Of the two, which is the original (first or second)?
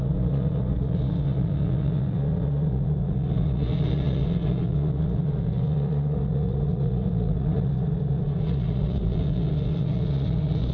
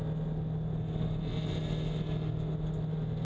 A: second